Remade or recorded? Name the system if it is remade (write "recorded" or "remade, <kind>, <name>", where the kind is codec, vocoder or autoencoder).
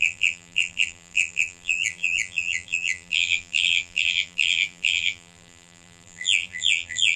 remade, vocoder, BigVGAN v2